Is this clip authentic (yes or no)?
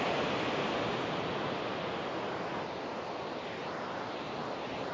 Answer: yes